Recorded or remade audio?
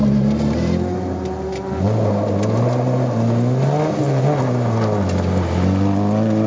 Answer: recorded